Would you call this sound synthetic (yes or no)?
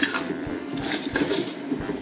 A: no